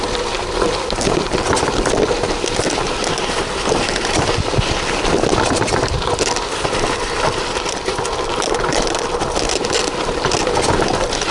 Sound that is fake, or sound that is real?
real